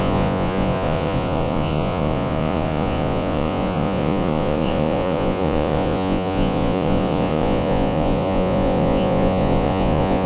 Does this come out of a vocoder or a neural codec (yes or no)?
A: yes